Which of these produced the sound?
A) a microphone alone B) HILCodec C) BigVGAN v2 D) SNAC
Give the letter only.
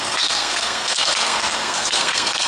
D